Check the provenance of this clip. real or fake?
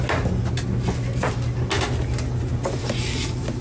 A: real